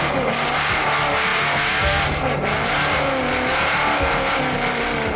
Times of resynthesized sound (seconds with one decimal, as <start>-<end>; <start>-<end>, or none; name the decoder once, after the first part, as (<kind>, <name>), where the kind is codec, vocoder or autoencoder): none